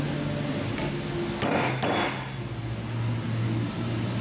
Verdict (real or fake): real